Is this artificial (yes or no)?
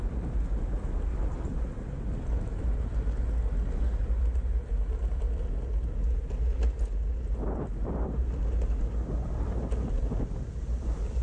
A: no